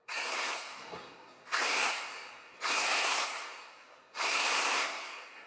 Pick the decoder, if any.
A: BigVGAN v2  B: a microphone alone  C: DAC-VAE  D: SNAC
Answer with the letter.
D